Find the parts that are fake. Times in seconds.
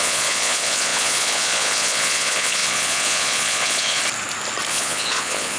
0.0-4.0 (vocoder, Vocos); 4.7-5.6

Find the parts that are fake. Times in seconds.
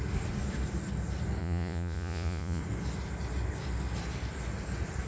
1.4-2.6 (vocoder, Vocos)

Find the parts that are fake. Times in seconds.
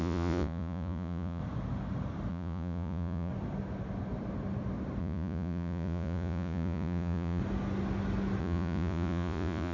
0.0-1.4 (vocoder, Vocos); 2.3-3.3; 5.0-7.4; 8.4-9.7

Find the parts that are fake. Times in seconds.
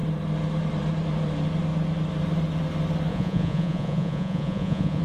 3.1-5.0 (vocoder, Vocos)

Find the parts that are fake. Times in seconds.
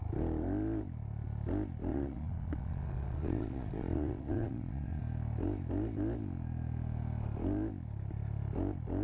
1.9-5.0 (vocoder, Vocos)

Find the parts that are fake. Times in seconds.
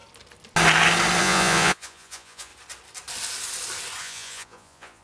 1.2-2.5 (vocoder, Vocos); 4.0-5.0